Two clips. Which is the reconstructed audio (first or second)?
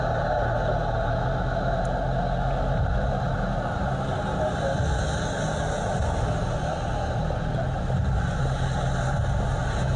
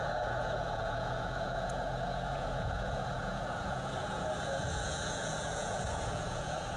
second